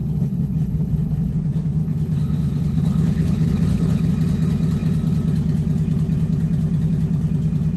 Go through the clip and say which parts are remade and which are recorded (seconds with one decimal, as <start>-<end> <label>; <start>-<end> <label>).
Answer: 0.0-1.3 remade; 1.3-1.8 recorded; 1.8-4.1 remade; 4.1-7.8 recorded